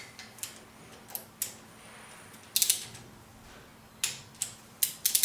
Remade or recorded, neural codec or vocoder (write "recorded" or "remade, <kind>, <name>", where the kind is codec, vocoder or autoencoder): recorded